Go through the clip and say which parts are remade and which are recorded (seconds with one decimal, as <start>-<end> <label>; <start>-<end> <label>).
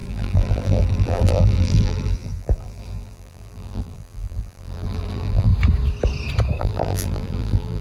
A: 0.0-5.5 remade; 5.5-6.6 recorded; 6.6-7.8 remade